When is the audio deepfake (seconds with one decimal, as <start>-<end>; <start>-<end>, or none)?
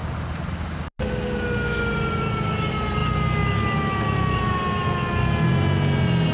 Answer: none